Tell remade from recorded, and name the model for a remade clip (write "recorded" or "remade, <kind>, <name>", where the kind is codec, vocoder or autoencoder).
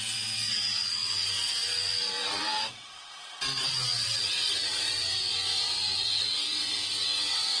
remade, vocoder, WaveNeXt